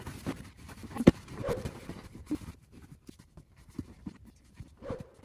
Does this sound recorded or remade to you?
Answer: remade